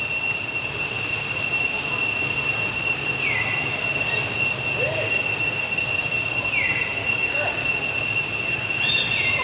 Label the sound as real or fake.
real